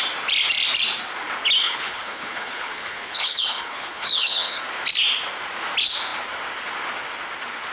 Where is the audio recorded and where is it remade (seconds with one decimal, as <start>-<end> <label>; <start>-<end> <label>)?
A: 0.0-1.6 recorded; 1.6-4.6 remade; 4.6-7.7 recorded